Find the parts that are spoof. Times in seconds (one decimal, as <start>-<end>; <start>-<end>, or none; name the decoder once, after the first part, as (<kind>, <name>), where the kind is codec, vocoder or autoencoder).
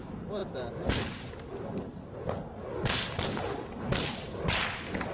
none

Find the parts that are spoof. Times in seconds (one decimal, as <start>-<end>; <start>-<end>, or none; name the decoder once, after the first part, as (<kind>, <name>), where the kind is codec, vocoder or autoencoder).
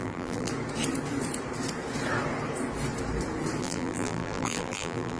0.0-0.5 (vocoder, BigVGAN v2); 3.6-5.2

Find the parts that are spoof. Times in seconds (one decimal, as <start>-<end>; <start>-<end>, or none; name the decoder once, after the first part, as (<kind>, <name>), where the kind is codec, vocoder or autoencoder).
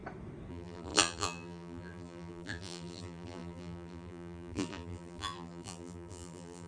0.5-6.7 (vocoder, BigVGAN v2)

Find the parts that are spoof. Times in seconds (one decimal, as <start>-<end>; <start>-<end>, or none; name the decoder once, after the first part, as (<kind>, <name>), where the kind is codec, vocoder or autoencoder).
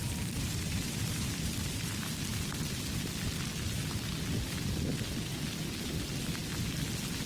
0.0-1.3 (vocoder, BigVGAN v2)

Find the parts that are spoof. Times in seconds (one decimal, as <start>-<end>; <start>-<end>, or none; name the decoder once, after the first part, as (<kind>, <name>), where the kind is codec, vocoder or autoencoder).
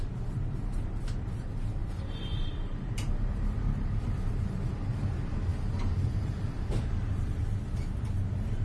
0.0-8.6 (vocoder, BigVGAN v2)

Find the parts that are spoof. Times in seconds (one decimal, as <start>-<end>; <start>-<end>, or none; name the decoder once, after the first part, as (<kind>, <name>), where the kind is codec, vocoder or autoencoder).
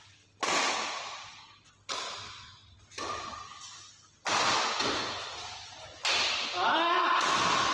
none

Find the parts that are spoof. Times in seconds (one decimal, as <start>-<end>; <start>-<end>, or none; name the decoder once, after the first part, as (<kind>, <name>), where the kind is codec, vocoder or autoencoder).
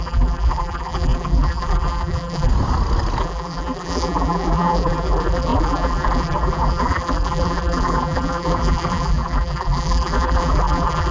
0.0-2.5 (vocoder, BigVGAN v2); 3.2-11.1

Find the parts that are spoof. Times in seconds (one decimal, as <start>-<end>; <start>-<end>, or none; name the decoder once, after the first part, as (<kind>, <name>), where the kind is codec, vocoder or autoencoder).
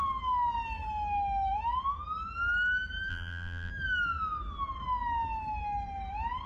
3.1-3.7 (vocoder, BigVGAN v2)